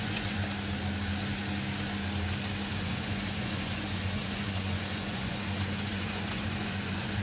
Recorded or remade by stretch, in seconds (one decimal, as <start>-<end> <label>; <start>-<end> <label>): 0.0-0.4 remade; 0.4-2.7 recorded; 2.7-7.2 remade